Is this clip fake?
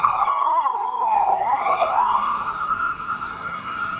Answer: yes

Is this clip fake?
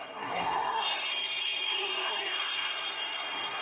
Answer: yes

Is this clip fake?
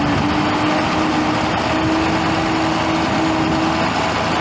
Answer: no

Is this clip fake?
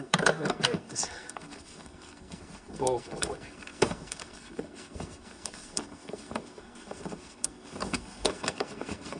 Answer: yes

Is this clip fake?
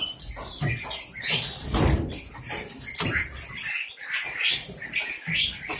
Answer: no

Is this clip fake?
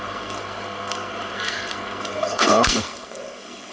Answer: yes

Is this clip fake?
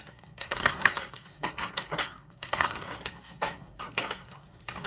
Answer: yes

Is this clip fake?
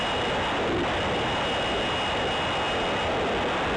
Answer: no